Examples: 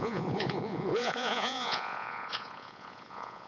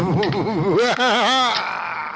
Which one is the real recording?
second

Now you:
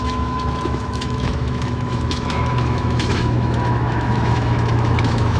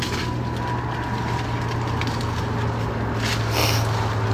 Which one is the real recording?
second